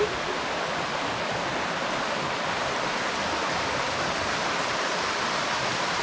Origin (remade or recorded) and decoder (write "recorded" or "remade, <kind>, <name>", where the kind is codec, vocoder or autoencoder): recorded